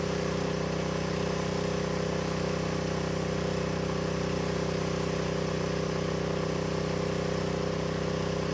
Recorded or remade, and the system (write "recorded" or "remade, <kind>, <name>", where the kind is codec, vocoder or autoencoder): recorded